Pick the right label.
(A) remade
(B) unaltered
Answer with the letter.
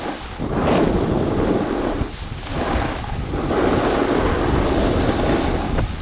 B